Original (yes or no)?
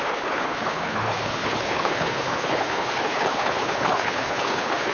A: no